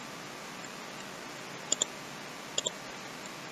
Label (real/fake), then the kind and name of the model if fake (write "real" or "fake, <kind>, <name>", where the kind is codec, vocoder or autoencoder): real